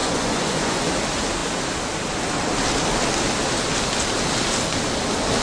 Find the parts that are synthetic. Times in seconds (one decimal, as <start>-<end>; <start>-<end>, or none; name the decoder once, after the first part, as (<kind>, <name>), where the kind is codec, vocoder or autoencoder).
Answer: 0.0-0.9 (vocoder, Vocos)